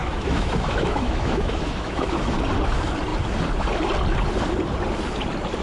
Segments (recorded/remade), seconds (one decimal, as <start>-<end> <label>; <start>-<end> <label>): 0.0-2.2 remade; 2.2-5.6 recorded